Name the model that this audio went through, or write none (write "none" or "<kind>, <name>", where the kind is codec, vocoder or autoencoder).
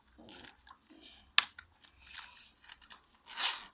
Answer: none